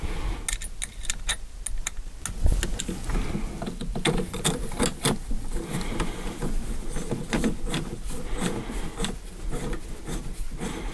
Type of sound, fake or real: real